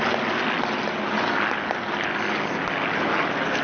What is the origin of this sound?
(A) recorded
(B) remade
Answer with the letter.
A